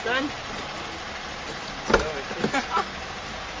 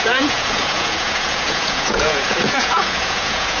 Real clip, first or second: first